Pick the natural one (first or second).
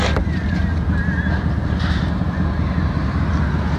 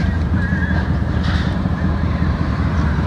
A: first